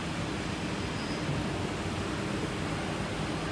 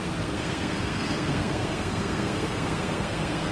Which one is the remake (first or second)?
second